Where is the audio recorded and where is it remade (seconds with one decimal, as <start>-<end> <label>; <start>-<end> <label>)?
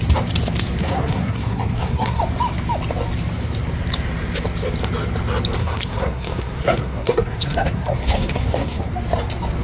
0.0-0.8 recorded; 0.8-2.2 remade; 2.2-5.6 recorded; 5.6-8.9 remade; 8.9-9.6 recorded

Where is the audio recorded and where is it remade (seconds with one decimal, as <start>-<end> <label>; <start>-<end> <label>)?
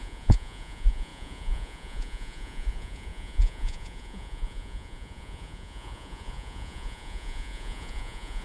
0.0-8.4 remade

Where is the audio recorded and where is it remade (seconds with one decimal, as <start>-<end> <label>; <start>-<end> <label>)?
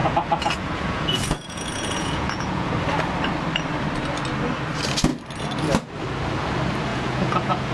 0.0-2.7 remade; 2.7-6.9 recorded; 6.9-7.7 remade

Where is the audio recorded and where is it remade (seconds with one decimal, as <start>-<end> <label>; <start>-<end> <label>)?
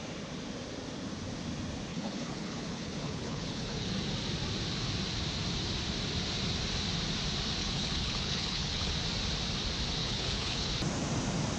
0.0-1.9 recorded; 1.9-3.9 remade; 3.9-7.6 recorded; 7.6-8.9 remade; 8.9-10.0 recorded; 10.0-10.7 remade; 10.7-11.6 recorded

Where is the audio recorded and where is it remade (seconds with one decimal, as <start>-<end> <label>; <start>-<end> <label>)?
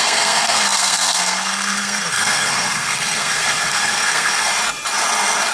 0.0-4.5 remade; 4.5-5.5 recorded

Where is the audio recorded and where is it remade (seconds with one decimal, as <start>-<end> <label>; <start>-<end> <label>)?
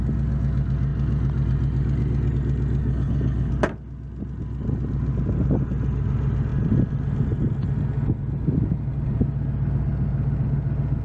0.0-2.8 recorded; 2.8-3.5 remade; 3.5-11.0 recorded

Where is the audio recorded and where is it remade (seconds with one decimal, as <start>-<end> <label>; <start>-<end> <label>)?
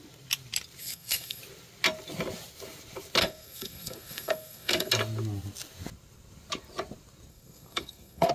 0.0-0.8 recorded; 0.8-1.4 remade; 1.4-3.2 recorded; 3.2-4.9 remade; 4.9-7.3 recorded; 7.3-8.3 remade